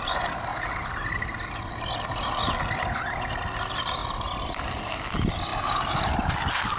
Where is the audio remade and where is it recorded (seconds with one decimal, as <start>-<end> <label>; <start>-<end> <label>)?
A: 0.0-6.8 recorded